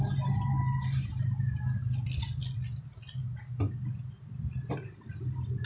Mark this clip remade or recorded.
recorded